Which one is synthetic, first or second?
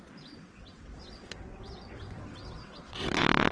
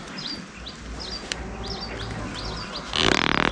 first